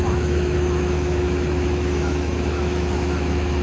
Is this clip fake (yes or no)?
yes